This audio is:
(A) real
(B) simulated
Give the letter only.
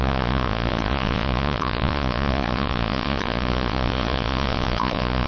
B